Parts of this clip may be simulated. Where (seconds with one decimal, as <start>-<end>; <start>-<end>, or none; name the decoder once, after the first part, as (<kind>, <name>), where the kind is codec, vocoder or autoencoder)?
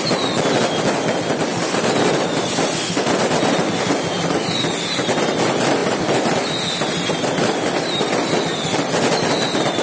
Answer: 1.5-3.1 (vocoder, BigVGAN v2); 5.8-9.3